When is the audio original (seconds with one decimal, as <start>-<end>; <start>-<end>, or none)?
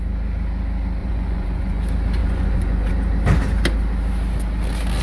0.0-1.0; 1.8-2.2; 2.9-5.0